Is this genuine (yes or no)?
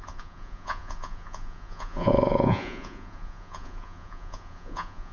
no